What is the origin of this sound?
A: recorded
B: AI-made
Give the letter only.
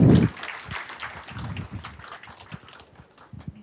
A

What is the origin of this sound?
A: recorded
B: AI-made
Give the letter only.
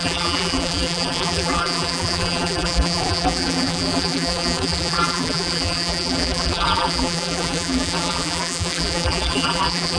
B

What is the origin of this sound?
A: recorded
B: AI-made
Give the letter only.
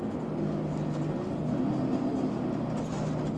A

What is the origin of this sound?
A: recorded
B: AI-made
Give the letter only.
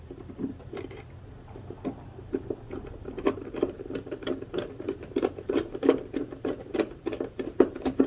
B